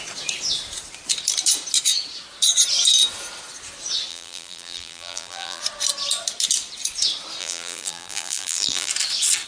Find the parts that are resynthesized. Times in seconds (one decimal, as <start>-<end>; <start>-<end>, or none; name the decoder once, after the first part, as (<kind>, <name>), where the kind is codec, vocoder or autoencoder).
4.1-5.6 (vocoder, BigVGAN v2); 7.4-8.9